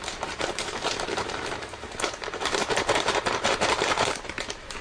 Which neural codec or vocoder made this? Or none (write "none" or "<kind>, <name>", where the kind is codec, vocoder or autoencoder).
vocoder, BigVGAN v2